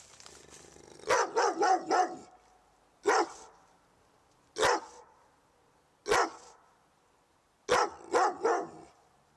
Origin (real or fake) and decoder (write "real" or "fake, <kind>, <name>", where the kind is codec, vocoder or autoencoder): real